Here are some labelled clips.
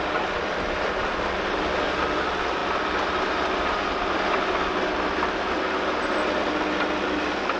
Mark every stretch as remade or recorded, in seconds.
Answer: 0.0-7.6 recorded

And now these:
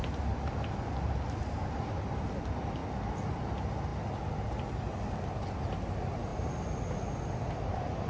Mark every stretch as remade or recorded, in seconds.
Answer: 0.0-8.1 recorded